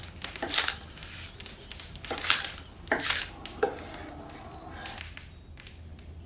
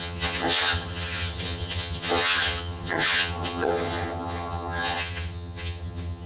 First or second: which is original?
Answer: first